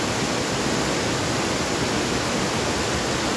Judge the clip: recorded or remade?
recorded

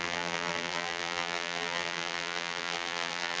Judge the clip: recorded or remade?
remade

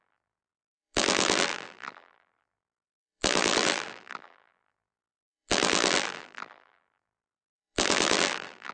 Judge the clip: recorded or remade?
remade